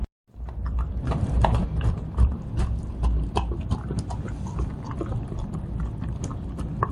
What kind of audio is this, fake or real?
fake